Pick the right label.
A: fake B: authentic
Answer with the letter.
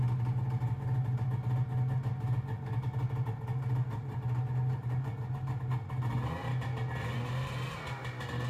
B